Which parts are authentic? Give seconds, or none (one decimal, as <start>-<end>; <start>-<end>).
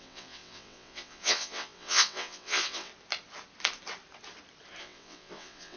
2.9-4.8